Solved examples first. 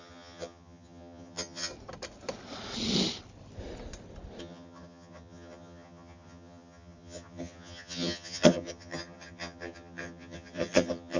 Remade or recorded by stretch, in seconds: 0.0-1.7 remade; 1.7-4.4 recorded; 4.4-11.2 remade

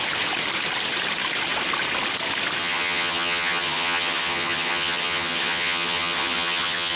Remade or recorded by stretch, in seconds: 0.0-2.6 recorded; 2.6-7.0 remade

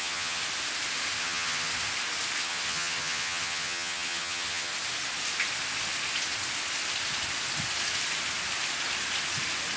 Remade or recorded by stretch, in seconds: 0.0-0.4 remade; 0.4-1.2 recorded; 1.2-1.7 remade; 1.7-2.4 recorded; 2.4-4.7 remade; 4.7-9.8 recorded

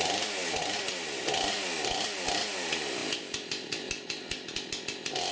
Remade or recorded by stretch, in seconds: 0.0-5.3 recorded

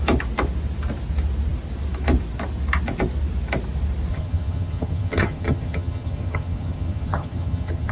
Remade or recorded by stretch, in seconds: 0.0-4.1 recorded; 4.1-7.9 remade